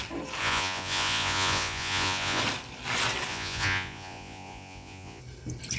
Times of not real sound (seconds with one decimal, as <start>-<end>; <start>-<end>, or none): 0.4-2.4; 3.3-5.2